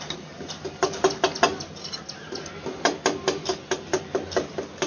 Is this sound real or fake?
real